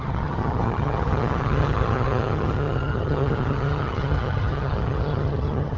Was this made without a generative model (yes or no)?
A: no